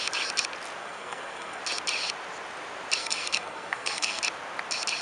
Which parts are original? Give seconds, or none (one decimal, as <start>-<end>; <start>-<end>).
0.0-0.8; 1.6-3.0; 4.2-5.0